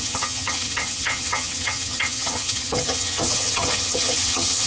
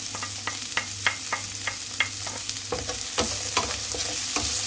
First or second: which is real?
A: second